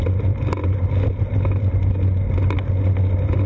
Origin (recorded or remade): recorded